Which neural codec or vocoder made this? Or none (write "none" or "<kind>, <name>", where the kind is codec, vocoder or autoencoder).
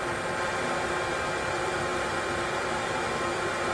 none